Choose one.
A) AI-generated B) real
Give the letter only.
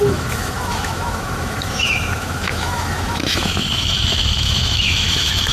A